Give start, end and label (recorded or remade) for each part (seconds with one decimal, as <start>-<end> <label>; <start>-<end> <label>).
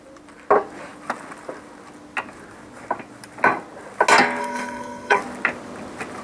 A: 0.0-4.4 recorded; 4.4-5.2 remade; 5.2-6.2 recorded